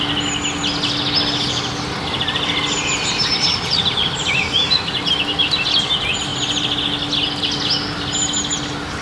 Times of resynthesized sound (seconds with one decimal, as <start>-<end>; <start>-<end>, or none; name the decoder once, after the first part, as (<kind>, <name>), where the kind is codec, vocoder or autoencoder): none

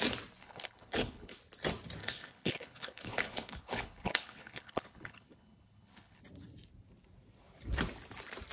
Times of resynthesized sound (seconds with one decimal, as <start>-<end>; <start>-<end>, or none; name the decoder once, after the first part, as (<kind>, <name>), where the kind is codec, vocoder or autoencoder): 0.4-1.4 (codec, HILCodec); 2.0-6.2

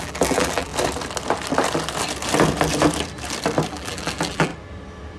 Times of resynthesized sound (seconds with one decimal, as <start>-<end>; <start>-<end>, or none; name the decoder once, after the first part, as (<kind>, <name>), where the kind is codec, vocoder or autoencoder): 0.0-0.7 (vocoder, BigVGAN v2); 3.7-4.5

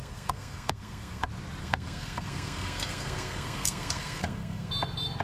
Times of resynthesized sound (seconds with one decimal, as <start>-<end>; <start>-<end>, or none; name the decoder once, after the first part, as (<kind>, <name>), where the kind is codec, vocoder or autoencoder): 0.0-1.2 (codec, SNAC); 1.6-4.7

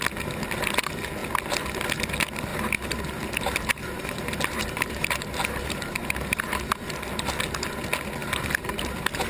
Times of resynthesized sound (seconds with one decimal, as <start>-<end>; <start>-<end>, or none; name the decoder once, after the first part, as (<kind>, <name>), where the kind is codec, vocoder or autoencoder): 2.5-6.6 (vocoder, BigVGAN v2); 8.2-9.3

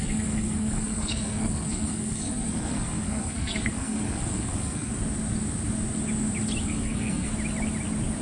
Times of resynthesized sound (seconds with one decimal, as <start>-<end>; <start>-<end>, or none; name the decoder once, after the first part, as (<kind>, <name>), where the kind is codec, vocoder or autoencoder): 0.0-4.9 (codec, SNAC); 6.6-7.3